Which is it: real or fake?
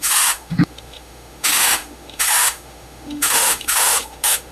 fake